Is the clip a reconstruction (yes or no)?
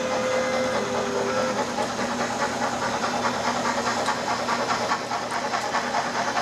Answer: no